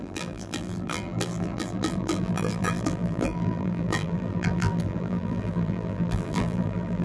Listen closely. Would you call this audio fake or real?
fake